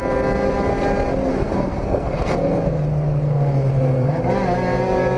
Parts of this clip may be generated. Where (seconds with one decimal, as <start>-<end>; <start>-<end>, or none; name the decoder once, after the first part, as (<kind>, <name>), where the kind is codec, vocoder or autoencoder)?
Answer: 1.3-4.2 (codec, SNAC)